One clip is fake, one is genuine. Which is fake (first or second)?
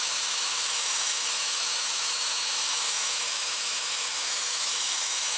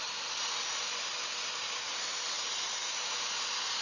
first